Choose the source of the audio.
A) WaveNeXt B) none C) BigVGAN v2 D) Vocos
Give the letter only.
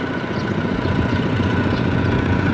D